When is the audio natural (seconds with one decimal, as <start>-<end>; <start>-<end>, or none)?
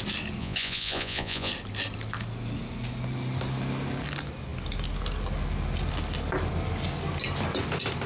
0.0-0.4; 1.5-8.1